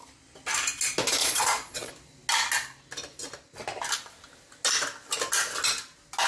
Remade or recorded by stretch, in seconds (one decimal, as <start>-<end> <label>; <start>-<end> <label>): 0.0-1.2 recorded; 1.2-1.9 remade; 1.9-6.3 recorded

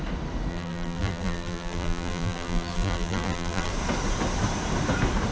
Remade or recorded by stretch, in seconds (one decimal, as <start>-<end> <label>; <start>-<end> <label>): 0.0-0.5 recorded; 0.5-3.7 remade; 3.7-5.3 recorded

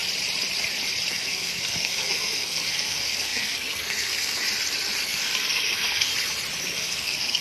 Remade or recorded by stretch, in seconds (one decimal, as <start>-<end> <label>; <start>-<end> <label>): 0.0-1.1 recorded; 1.1-4.4 remade; 4.4-5.0 recorded; 5.0-6.1 remade; 6.1-6.6 recorded; 6.6-7.4 remade

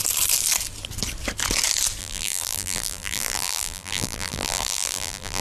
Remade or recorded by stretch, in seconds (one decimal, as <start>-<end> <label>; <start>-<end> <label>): 0.0-2.0 recorded; 2.0-5.4 remade

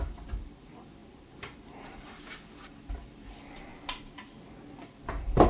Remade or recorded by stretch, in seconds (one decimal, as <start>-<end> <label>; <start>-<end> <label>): 0.0-3.7 remade; 3.7-4.8 recorded; 4.8-5.5 remade

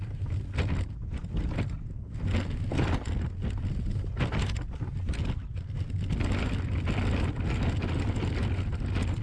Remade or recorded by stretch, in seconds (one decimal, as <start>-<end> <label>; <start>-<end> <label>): 0.0-9.2 recorded

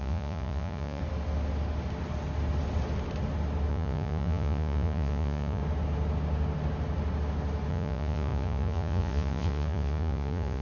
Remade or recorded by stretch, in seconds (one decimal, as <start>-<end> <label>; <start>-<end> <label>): 0.0-1.0 remade; 1.0-3.7 recorded; 3.7-5.6 remade; 5.6-7.7 recorded; 7.7-10.6 remade

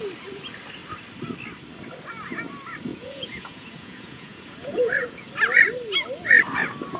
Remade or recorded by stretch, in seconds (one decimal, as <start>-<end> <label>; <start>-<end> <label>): 0.0-2.9 recorded; 2.9-5.3 remade; 5.3-7.0 recorded